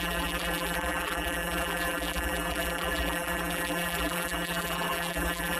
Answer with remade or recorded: remade